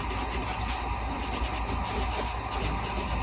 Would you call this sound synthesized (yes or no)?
no